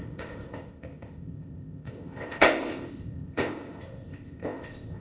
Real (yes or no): no